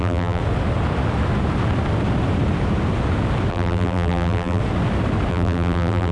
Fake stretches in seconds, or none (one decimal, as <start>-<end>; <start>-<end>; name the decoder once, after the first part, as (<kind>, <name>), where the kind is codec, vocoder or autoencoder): 0.0-0.4 (vocoder, BigVGAN v2); 3.5-4.6; 5.3-6.1